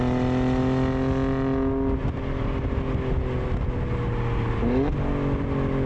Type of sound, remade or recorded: recorded